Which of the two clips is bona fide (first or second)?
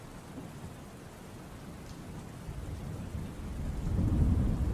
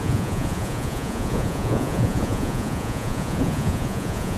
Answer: first